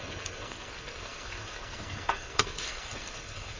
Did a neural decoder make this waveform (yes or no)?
yes